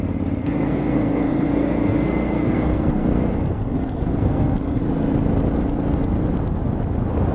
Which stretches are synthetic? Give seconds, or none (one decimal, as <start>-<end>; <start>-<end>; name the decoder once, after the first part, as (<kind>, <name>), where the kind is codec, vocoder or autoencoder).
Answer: 0.4-4.8 (codec, SNAC)

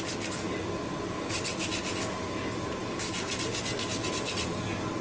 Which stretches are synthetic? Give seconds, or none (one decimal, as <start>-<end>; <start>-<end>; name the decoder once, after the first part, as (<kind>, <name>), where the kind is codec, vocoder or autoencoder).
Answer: none